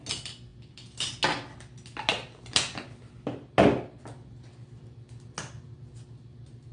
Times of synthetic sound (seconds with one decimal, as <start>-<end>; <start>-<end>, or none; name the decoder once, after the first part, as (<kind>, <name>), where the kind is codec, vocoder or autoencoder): none